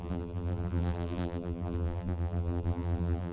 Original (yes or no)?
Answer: no